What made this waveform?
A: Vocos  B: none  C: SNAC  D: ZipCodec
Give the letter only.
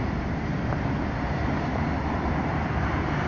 B